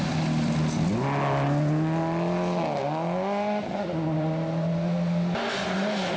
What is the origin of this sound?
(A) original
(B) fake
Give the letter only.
A